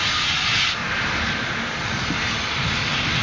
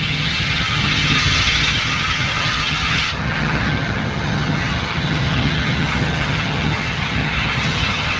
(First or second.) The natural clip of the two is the first